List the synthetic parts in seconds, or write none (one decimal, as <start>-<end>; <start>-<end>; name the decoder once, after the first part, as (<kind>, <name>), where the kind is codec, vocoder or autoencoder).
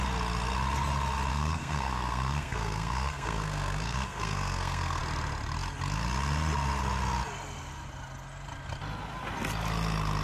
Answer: 1.3-5.0 (codec, SNAC)